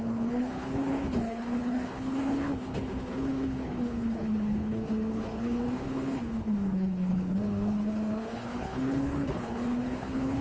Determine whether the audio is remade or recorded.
remade